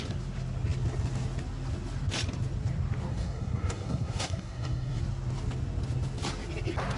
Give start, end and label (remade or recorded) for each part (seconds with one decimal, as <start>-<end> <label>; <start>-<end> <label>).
0.0-3.1 recorded; 3.1-5.0 remade; 5.0-7.0 recorded